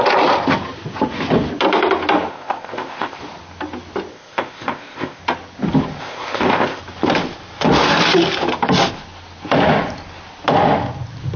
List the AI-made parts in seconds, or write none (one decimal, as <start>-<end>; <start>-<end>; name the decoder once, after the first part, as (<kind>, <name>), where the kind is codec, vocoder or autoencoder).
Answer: 2.3-3.2 (codec, ZipCodec); 4.1-5.2; 6.0-6.8